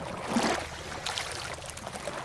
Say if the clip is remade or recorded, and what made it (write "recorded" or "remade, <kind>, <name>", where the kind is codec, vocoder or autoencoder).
recorded